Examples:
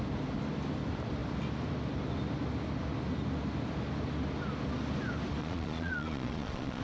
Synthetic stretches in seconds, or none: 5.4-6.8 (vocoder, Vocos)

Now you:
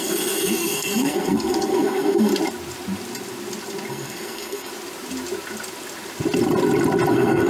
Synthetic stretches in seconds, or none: 0.0-2.3 (codec, SNAC); 3.9-4.7; 7.1-7.5